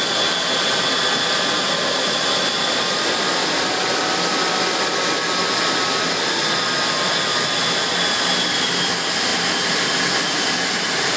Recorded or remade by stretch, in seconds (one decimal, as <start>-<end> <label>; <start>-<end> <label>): 0.0-11.2 recorded